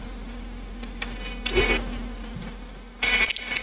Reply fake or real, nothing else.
real